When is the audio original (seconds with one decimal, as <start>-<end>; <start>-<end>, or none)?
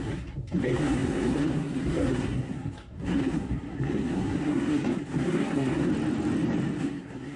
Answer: 5.9-6.8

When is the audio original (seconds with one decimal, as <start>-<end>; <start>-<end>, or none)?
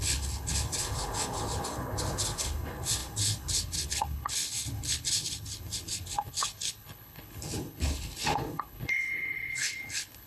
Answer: none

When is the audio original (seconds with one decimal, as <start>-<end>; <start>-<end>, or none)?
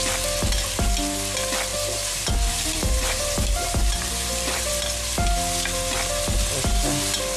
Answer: 0.0-1.7; 4.7-7.4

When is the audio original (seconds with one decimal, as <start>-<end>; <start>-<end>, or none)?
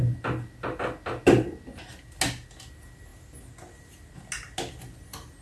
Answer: 0.0-5.4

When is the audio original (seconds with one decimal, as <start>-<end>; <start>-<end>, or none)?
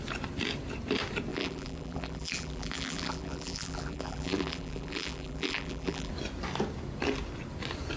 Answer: 0.0-1.3; 6.1-8.0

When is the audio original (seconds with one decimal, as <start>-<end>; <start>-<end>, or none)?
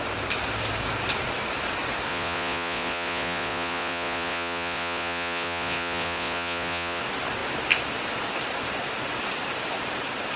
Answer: 0.0-2.1; 7.0-10.4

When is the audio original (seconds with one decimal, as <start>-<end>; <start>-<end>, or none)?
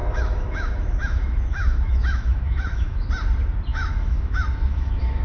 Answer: 3.1-3.7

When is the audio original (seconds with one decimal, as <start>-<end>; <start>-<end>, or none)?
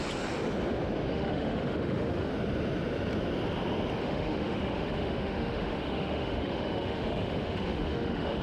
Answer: 0.0-1.1; 2.3-4.0